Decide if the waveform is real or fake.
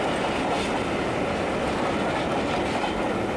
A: real